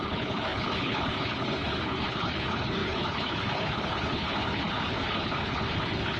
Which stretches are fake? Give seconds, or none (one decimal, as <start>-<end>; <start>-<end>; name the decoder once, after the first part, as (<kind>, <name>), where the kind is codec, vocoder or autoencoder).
0.0-6.2 (codec, HILCodec)